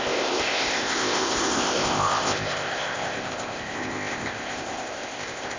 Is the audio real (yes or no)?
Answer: no